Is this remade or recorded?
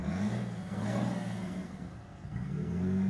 remade